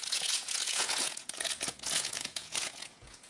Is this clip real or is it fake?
fake